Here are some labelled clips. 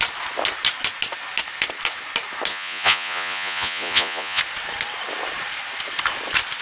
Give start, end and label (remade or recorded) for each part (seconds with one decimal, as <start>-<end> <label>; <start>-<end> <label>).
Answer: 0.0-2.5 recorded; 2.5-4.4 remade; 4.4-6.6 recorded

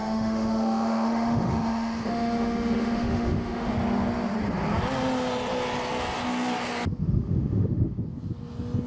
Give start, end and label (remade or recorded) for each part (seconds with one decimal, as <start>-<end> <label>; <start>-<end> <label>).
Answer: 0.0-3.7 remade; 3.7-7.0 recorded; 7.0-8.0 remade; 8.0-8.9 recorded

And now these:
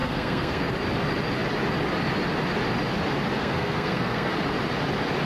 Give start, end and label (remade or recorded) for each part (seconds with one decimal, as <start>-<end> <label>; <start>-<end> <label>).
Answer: 0.0-0.7 remade; 0.7-3.4 recorded; 3.4-4.3 remade; 4.3-5.3 recorded

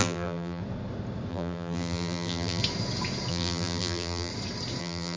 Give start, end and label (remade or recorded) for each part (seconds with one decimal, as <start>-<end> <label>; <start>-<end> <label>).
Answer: 0.0-0.6 remade; 0.6-1.3 recorded; 1.3-2.6 remade; 2.6-3.3 recorded; 3.3-4.3 remade; 4.3-4.8 recorded; 4.8-5.2 remade